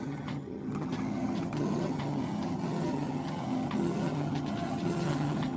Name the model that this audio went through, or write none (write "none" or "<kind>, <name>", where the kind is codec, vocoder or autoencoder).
vocoder, HiFi-GAN